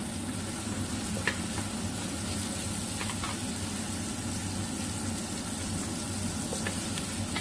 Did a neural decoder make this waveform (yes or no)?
no